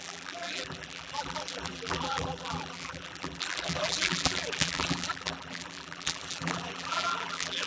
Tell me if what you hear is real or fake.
fake